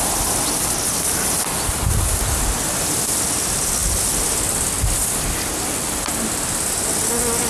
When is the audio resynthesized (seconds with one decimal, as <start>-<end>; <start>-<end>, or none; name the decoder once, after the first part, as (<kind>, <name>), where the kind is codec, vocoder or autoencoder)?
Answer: none